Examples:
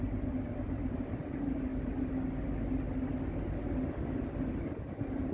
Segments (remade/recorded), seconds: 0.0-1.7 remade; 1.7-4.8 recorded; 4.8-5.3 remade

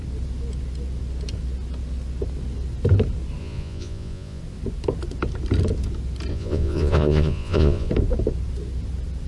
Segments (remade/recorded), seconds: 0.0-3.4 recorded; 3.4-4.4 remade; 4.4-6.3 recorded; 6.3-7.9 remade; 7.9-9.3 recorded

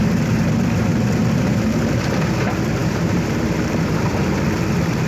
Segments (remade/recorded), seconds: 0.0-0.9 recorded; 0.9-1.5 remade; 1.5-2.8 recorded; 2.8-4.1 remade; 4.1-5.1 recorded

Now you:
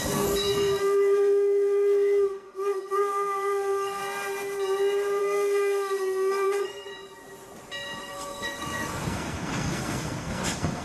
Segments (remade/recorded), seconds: 0.0-4.0 remade; 4.0-5.2 recorded; 5.2-6.9 remade; 6.9-8.0 recorded; 8.0-10.8 remade

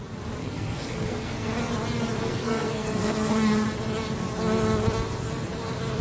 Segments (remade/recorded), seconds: 0.0-0.4 recorded; 0.4-1.5 remade; 1.5-2.2 recorded; 2.2-3.3 remade; 3.3-6.0 recorded

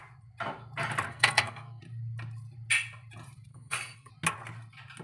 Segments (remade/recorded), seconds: 0.0-1.1 recorded; 1.1-1.8 remade; 1.8-3.5 recorded; 3.5-4.1 remade; 4.1-5.0 recorded